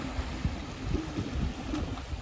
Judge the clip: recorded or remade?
recorded